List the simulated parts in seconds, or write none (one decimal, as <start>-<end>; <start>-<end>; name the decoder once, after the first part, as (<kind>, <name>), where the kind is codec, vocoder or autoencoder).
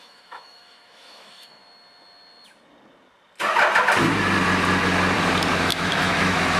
0.0-1.6 (autoencoder, DAC-VAE); 5.5-6.6